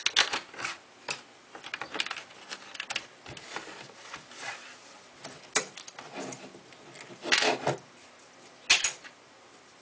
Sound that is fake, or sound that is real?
real